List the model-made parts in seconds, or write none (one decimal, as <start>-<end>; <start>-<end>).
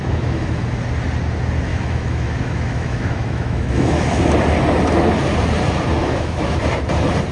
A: 0.0-0.6; 1.7-4.3; 6.0-6.6